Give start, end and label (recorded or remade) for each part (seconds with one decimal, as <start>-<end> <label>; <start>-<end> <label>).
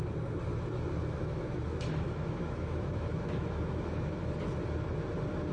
0.0-1.0 recorded; 1.0-4.3 remade; 4.3-5.5 recorded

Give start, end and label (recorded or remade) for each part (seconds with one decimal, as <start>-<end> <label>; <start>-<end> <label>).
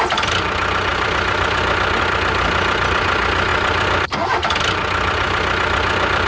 0.0-0.9 recorded; 0.9-1.6 remade; 1.6-6.3 recorded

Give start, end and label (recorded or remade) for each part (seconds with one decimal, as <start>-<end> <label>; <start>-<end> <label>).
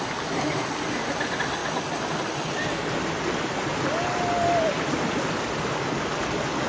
0.0-6.7 recorded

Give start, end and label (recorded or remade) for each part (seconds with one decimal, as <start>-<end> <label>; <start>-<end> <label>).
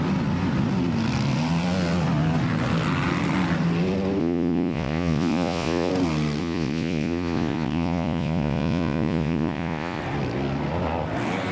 0.0-4.2 recorded; 4.2-5.9 remade; 5.9-6.4 recorded; 6.4-10.0 remade; 10.0-11.5 recorded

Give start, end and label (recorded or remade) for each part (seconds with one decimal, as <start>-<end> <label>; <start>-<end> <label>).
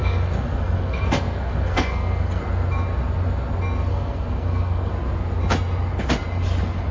0.0-2.4 remade; 2.4-3.9 recorded; 3.9-4.9 remade; 4.9-6.9 recorded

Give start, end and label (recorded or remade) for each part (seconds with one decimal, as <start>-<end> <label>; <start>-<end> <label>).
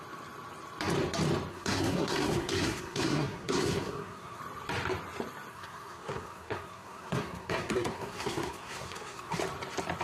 0.0-1.5 recorded; 1.5-4.4 remade; 4.4-5.5 recorded; 5.5-9.4 remade; 9.4-10.0 recorded